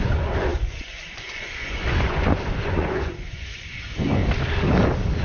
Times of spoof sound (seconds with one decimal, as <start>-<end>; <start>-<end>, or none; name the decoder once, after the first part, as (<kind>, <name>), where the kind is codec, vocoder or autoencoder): 0.0-4.2 (vocoder, Vocos)